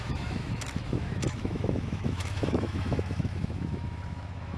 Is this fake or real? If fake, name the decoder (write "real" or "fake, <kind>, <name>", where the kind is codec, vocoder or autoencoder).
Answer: fake, autoencoder, DAC-VAE